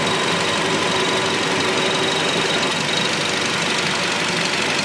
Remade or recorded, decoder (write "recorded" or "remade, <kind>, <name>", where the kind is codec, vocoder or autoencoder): recorded